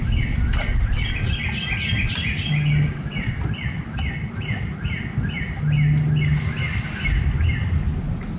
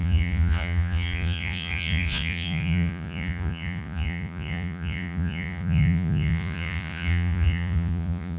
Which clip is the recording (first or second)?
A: first